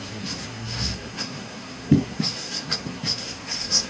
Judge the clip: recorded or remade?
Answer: remade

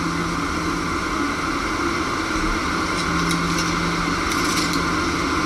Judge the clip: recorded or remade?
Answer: recorded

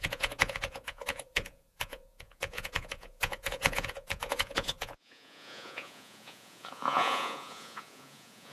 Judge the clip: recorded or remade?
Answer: remade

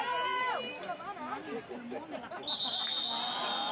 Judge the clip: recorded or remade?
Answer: recorded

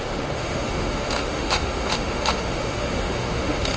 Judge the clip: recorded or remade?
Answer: remade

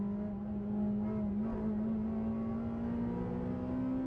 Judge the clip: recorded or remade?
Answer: recorded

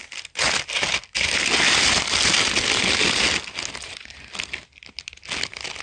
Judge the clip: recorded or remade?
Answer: recorded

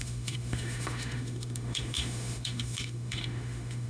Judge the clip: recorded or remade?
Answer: remade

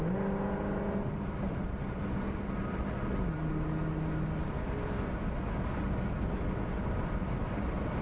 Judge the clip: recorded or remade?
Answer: recorded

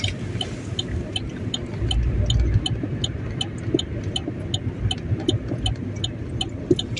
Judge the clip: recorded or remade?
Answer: recorded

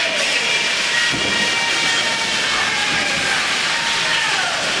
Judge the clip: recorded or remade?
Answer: recorded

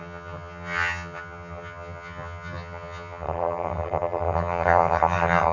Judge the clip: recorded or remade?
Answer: remade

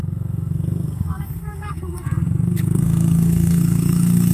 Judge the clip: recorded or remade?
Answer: remade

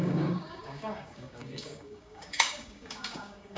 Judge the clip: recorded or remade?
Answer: remade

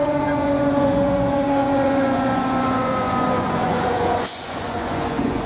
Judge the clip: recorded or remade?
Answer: remade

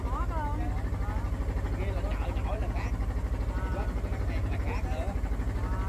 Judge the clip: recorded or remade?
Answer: recorded